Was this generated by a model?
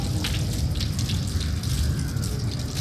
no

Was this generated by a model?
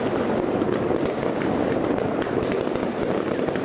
no